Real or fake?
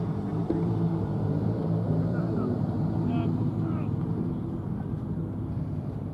fake